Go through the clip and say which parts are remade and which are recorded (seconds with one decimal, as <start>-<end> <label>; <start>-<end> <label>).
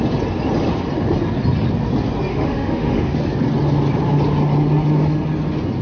0.0-2.3 recorded; 2.3-3.2 remade; 3.2-5.8 recorded